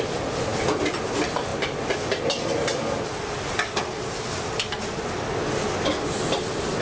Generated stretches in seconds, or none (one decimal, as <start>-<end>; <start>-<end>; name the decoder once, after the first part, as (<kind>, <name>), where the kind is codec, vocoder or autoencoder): none